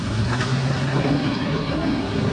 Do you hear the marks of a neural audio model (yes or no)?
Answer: yes